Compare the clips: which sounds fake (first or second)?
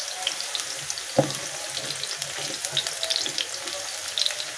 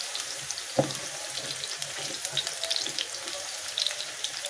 second